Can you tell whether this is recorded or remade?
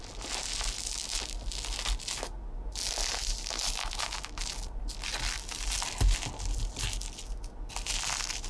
recorded